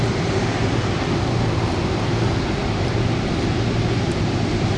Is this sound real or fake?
fake